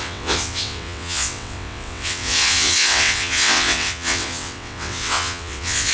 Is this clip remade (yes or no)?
yes